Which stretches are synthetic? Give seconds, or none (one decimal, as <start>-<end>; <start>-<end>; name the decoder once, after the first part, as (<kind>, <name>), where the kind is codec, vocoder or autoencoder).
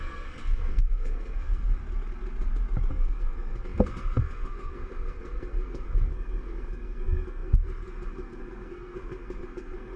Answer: 0.0-1.8 (codec, SNAC); 2.9-10.0